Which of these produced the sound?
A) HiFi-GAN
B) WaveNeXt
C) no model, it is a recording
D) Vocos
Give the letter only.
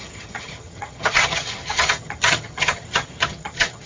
A